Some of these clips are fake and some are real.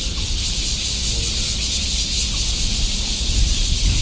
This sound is real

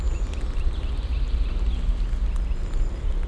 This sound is real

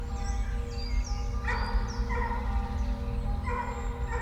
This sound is real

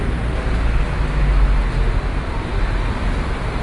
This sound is real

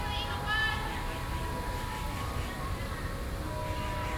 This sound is real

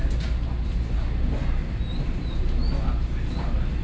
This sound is real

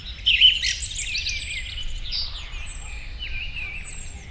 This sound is real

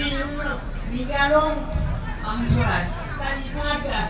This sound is real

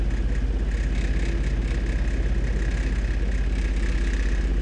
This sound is real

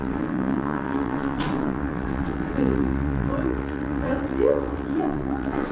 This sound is fake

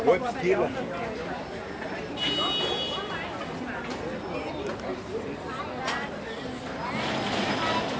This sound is real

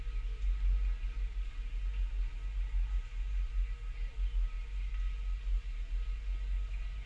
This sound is real